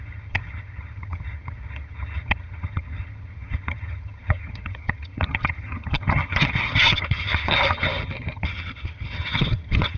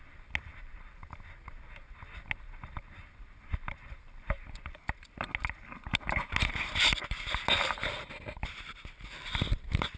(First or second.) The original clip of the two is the second